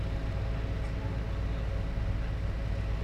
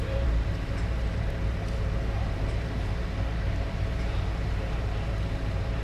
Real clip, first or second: first